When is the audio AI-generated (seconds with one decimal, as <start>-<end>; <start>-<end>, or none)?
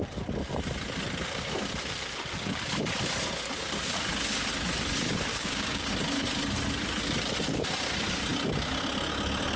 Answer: 5.3-5.9